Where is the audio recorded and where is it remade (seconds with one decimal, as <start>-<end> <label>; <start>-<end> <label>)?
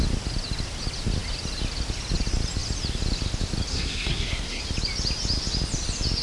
0.0-3.7 recorded; 3.7-4.6 remade; 4.6-6.2 recorded